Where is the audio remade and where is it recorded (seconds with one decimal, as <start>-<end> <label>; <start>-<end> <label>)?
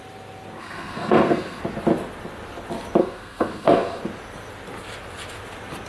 0.0-0.6 recorded; 0.6-1.6 remade; 1.6-3.0 recorded; 3.0-4.0 remade; 4.0-5.9 recorded